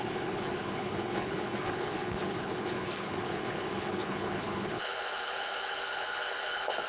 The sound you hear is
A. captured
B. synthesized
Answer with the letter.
B